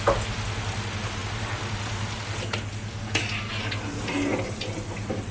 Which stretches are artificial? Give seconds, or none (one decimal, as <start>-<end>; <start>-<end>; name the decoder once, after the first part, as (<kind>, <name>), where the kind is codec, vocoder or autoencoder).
none